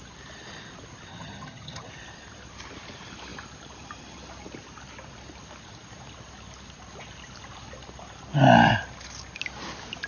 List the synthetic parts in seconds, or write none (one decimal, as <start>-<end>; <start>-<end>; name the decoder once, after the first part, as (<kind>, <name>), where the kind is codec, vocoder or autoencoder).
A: 1.1-1.9 (vocoder, HiFi-GAN)